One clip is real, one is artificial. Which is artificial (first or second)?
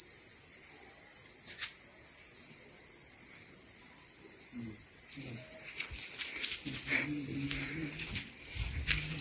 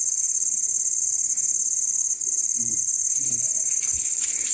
second